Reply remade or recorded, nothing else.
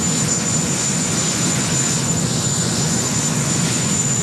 remade